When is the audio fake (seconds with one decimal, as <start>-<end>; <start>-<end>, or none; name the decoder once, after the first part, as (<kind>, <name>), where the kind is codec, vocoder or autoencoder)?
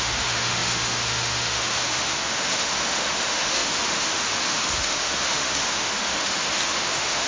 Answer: 0.0-7.3 (autoencoder, DAC-VAE)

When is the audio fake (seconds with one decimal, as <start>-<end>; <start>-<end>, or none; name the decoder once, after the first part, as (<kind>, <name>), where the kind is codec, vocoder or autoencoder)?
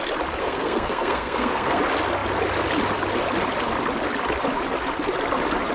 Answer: 0.4-1.8 (codec, SNAC)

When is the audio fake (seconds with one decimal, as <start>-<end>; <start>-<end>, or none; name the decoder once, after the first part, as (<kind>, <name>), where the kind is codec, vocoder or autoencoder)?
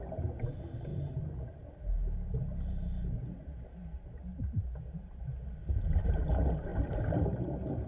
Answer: 4.3-5.2 (vocoder, BigVGAN v2)